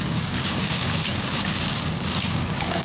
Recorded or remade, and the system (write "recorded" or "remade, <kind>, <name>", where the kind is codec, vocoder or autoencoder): remade, codec, DAC